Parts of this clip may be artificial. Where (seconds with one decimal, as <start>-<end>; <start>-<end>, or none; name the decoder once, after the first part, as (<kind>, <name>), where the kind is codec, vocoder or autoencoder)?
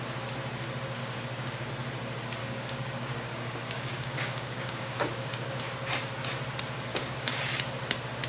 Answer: 1.0-1.7 (codec, DAC); 2.4-5.6; 6.9-7.4